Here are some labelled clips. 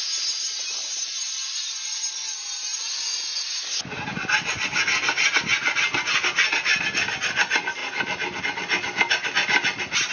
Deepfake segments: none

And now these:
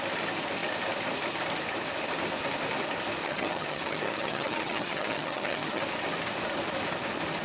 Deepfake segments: 3.2-5.8

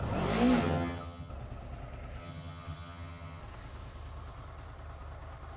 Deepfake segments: 0.6-1.3; 2.2-3.4